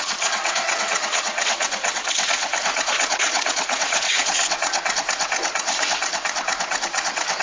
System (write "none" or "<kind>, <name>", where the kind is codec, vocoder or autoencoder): vocoder, WaveNeXt